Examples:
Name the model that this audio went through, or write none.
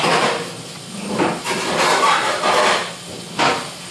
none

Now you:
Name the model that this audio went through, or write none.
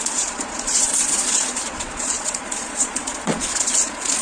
vocoder, Vocos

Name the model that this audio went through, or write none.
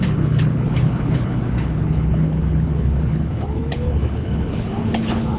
codec, HILCodec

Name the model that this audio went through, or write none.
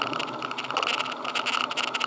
none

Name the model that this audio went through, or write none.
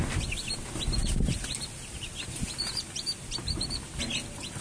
none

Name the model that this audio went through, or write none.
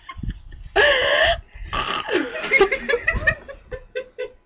none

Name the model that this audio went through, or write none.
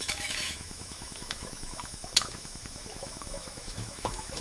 autoencoder, DAC-VAE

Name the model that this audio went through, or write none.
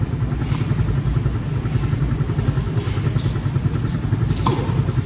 none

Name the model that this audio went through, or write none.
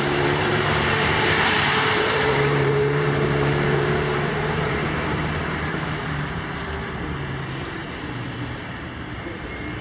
vocoder, BigVGAN v2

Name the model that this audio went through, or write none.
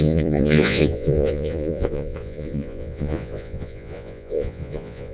vocoder, Vocos